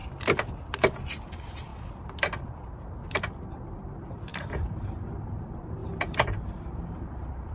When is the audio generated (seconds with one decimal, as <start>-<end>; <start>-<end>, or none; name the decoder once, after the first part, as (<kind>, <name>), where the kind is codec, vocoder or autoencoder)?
0.8-1.7 (vocoder, BigVGAN v2); 3.7-7.5